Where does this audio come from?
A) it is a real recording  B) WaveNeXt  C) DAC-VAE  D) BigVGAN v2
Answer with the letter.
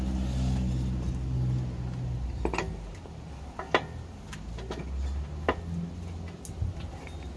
A